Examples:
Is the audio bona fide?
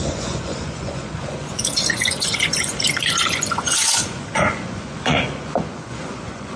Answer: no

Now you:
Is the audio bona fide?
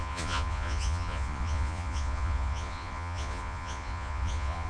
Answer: no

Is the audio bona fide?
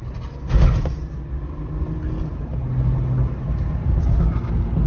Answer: yes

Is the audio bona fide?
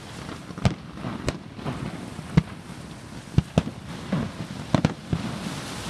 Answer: yes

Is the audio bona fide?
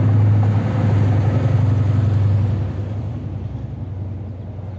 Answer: yes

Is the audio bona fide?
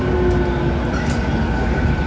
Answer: yes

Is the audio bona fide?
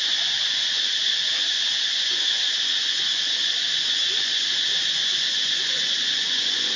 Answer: no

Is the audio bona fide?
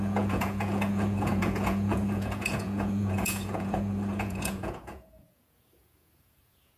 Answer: no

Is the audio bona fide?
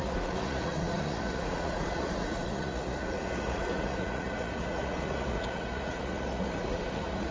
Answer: no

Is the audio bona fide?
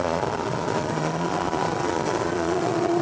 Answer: no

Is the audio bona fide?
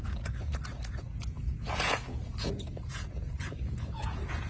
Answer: no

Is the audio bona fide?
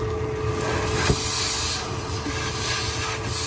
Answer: yes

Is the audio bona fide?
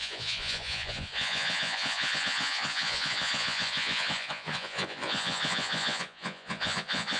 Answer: no